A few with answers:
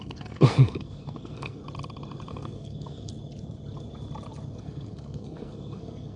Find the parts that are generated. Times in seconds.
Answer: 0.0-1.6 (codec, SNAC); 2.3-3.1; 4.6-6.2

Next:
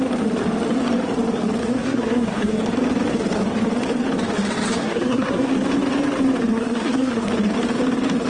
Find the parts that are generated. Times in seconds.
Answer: 1.6-2.6 (codec, SNAC); 4.8-5.5; 6.5-7.3

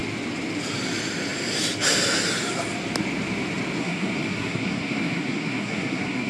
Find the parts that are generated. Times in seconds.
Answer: 3.8-6.3 (codec, SNAC)

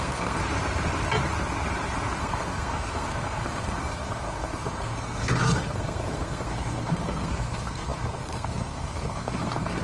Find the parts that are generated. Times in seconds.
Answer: 0.0-0.4 (codec, SNAC); 2.2-9.8